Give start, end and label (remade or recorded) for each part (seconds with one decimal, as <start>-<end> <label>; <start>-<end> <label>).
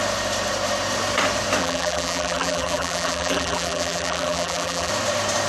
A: 0.0-1.6 recorded; 1.6-4.9 remade; 4.9-5.5 recorded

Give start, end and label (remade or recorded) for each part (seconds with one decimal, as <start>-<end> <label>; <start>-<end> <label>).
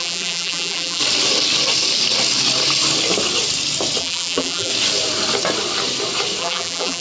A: 0.0-1.0 remade; 1.0-4.0 recorded; 4.0-4.7 remade; 4.7-6.4 recorded; 6.4-7.0 remade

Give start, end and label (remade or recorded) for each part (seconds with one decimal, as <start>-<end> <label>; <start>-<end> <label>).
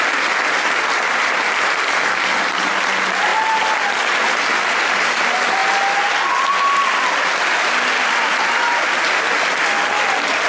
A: 0.0-10.5 recorded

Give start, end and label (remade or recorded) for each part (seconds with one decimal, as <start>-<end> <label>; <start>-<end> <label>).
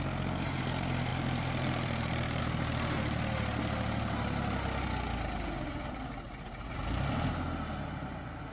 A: 0.0-1.1 recorded; 1.1-2.4 remade; 2.4-8.5 recorded